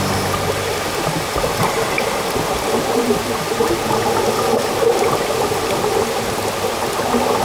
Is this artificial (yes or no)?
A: no